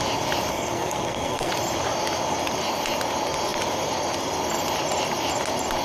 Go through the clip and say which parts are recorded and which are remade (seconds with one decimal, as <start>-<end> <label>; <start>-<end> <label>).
0.0-0.5 recorded; 0.5-1.5 remade; 1.5-5.8 recorded